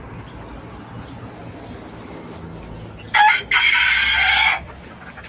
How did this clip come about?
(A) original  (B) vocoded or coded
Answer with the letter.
A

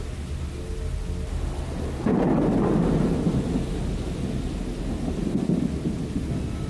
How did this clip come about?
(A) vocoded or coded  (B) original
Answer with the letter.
B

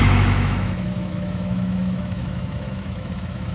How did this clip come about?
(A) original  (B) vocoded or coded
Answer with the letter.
B